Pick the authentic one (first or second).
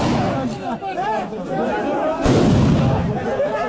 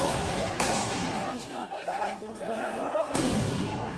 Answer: first